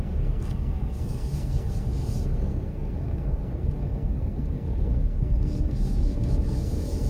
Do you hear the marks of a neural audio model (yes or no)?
yes